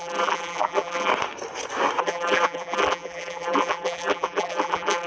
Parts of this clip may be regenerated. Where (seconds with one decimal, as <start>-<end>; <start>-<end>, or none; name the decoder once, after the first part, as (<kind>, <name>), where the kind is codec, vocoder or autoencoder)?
0.0-1.1 (vocoder, BigVGAN v2); 2.0-5.1